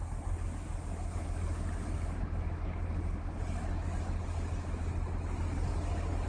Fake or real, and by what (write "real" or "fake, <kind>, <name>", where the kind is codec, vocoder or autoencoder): real